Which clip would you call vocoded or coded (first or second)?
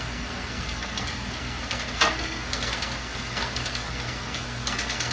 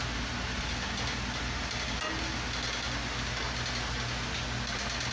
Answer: first